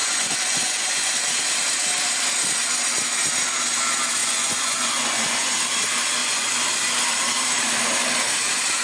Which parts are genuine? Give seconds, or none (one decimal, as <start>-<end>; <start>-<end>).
1.1-4.2; 5.5-6.2; 6.7-8.8

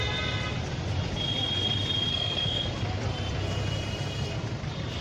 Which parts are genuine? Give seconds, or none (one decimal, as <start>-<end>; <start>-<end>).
0.0-2.1; 2.7-5.0

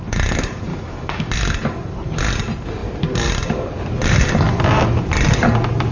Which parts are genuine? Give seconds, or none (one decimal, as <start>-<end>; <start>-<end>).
0.0-0.7; 1.3-5.9

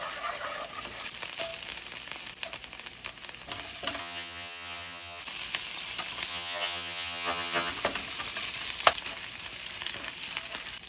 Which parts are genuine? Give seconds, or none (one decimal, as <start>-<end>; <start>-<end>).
0.0-4.0; 5.2-6.3; 7.7-10.9

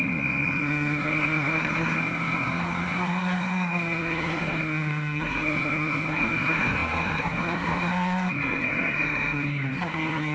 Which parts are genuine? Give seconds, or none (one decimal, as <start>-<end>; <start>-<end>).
none